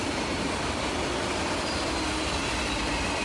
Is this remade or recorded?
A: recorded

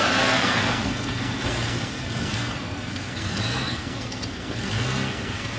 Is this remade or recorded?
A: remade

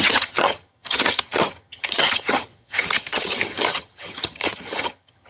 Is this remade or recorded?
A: remade